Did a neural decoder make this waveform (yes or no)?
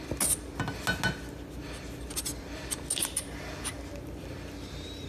no